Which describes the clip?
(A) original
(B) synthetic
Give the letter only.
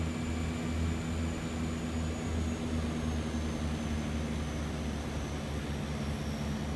A